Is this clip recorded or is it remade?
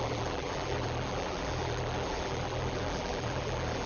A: remade